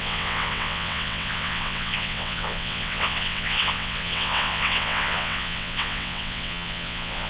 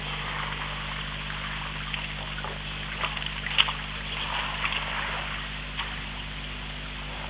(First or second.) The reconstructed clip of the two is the first